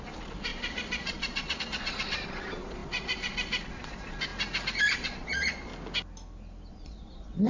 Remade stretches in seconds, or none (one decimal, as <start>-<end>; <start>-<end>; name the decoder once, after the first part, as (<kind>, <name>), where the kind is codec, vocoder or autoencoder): 0.0-4.3 (vocoder, Vocos); 4.8-5.7; 6.7-7.5